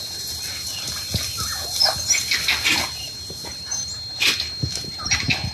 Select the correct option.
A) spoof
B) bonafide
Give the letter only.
B